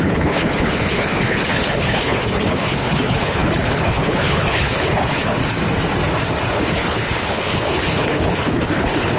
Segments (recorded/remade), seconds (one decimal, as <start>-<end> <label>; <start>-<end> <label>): 0.0-5.4 remade; 5.4-6.5 recorded; 6.5-9.2 remade